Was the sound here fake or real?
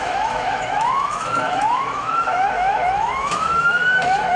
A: fake